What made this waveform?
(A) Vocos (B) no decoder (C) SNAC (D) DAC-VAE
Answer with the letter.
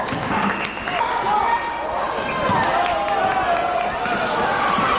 B